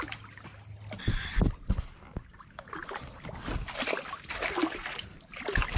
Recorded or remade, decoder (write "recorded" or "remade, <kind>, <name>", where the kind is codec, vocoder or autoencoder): recorded